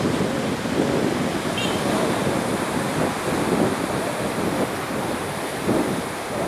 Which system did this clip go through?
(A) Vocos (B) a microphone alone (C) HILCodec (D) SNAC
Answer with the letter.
B